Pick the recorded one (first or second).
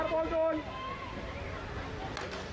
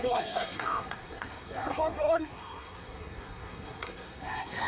first